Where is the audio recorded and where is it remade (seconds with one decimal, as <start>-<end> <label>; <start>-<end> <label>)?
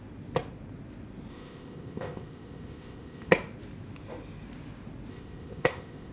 0.0-1.3 recorded; 1.3-3.3 remade; 3.3-5.1 recorded; 5.1-6.1 remade